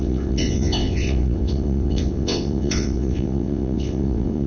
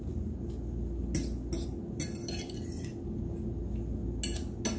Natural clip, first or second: second